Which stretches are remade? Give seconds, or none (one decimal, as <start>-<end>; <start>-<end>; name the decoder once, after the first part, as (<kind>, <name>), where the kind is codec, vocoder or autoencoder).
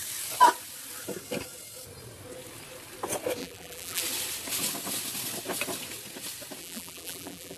3.4-4.0 (vocoder, BigVGAN v2); 6.6-7.6